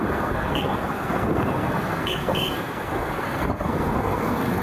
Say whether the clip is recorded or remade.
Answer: remade